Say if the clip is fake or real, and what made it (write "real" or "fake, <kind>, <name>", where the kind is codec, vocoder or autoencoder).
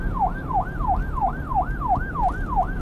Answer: real